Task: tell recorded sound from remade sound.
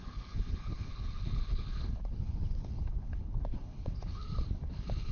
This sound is remade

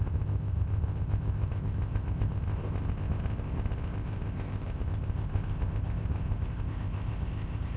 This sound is remade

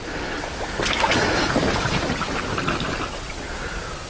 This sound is recorded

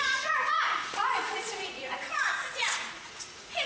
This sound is remade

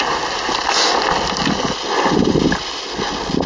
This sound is recorded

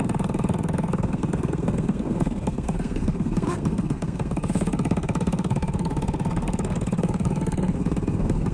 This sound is remade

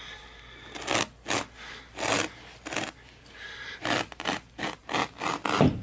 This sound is recorded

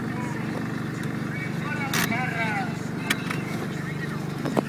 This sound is recorded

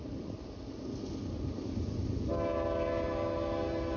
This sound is recorded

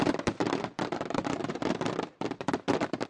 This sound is remade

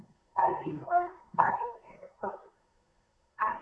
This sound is remade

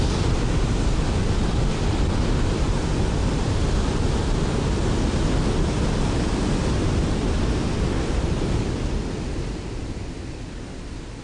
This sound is recorded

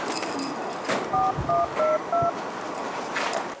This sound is recorded